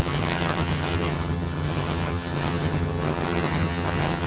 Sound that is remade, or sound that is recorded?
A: remade